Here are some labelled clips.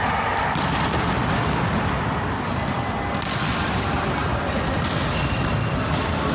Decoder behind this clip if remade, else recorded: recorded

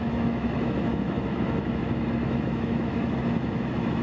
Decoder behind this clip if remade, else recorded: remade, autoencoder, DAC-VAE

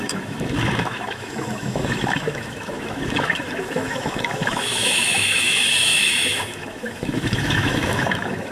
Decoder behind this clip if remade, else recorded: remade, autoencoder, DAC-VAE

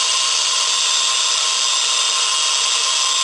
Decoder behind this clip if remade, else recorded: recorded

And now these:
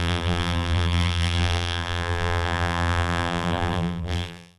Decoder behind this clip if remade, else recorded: remade, vocoder, BigVGAN v2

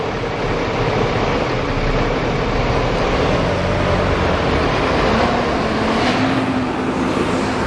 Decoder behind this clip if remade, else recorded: recorded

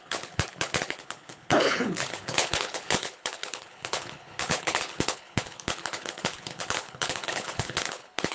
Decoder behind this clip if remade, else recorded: remade, codec, HILCodec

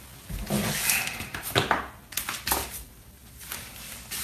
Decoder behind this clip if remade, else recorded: recorded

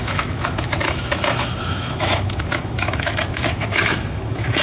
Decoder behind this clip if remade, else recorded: remade, autoencoder, DAC-VAE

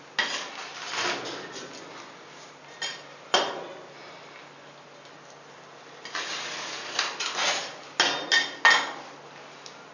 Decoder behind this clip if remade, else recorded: recorded